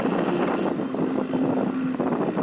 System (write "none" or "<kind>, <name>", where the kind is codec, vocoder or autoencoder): none